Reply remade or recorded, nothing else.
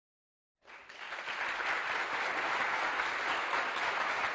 recorded